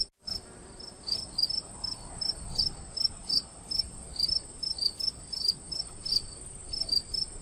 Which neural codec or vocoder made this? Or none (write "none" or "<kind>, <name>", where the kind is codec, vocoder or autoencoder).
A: none